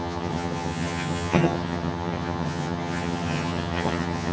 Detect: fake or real fake